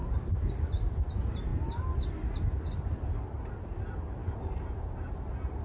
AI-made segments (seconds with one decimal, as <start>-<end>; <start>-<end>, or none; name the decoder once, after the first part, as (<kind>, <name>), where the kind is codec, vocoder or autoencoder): none